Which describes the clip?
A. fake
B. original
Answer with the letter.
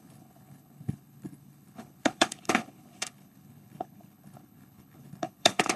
A